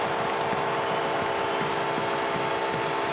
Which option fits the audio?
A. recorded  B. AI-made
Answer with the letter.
A